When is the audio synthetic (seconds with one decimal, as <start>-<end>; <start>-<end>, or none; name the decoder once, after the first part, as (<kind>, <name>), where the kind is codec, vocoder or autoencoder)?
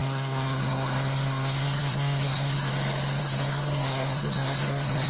0.0-2.7 (codec, SNAC); 3.2-5.1